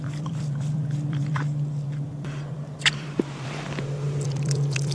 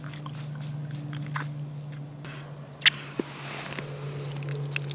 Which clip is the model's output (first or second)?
first